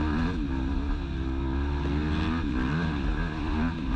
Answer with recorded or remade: recorded